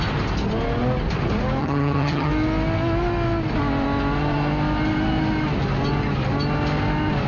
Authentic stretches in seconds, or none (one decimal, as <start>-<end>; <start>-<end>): 0.0-1.6; 2.3-7.3